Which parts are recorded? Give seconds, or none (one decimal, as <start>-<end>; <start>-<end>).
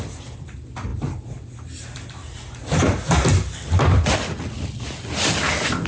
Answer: 0.0-5.9